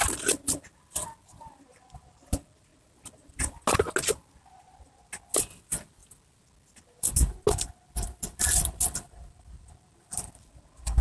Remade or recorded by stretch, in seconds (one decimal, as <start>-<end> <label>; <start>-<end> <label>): 0.0-11.0 recorded